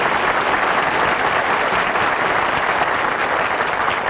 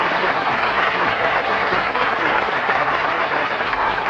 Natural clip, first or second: first